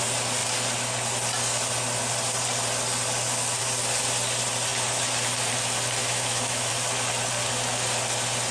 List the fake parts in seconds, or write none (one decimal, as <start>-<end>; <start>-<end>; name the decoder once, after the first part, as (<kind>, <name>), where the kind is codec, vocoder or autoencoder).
6.0-6.7 (autoencoder, DAC-VAE)